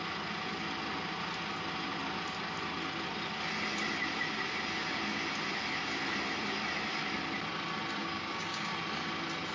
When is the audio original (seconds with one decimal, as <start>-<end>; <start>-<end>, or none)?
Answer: 0.0-8.0; 8.7-9.5